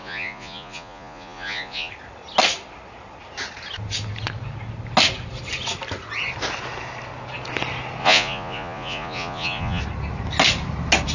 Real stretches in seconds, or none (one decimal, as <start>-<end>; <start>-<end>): 1.9-8.0; 9.8-11.1